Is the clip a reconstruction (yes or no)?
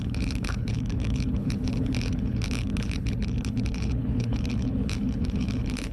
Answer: yes